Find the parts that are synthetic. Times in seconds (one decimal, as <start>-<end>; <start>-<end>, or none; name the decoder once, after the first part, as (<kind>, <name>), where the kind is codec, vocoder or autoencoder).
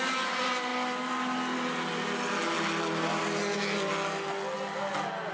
none